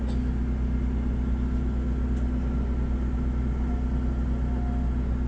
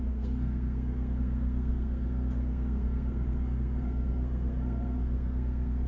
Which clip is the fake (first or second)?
second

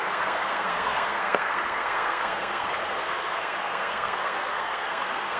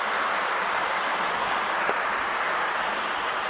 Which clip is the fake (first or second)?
first